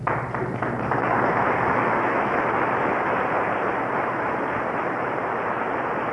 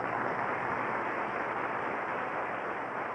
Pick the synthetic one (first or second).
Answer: first